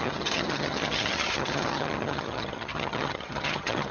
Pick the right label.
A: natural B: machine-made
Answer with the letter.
B